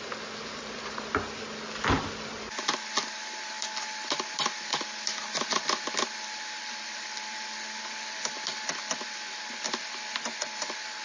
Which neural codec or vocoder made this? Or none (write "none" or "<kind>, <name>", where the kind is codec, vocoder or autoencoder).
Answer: none